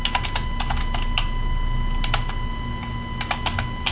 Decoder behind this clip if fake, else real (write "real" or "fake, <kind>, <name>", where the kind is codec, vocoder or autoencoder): real